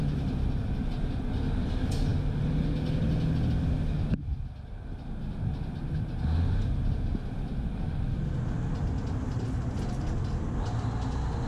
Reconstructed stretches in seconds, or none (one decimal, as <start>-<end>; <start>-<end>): none